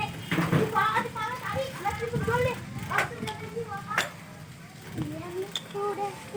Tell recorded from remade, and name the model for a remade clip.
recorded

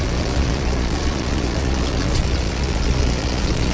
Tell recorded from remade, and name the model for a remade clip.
remade, vocoder, Vocos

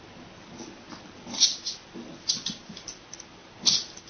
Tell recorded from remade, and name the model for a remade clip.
recorded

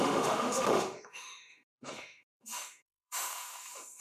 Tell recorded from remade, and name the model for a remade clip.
remade, autoencoder, DAC-VAE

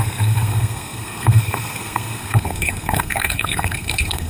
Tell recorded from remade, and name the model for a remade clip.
remade, codec, SNAC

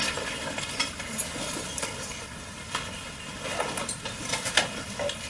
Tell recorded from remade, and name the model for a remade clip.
recorded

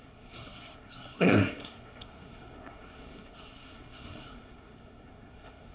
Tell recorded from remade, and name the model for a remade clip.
remade, codec, SNAC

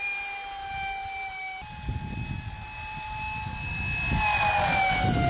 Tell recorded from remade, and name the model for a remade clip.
recorded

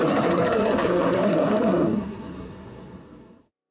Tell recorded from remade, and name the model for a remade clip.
remade, codec, SNAC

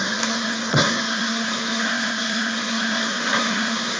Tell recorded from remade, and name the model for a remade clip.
remade, codec, SNAC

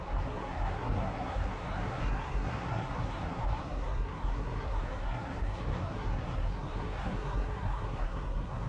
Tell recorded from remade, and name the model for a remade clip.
remade, codec, SNAC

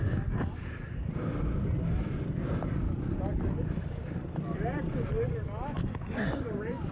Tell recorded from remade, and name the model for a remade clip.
recorded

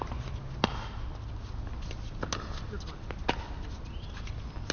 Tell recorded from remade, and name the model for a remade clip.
recorded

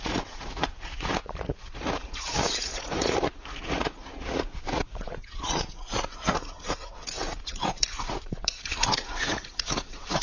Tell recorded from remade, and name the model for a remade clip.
remade, vocoder, Vocos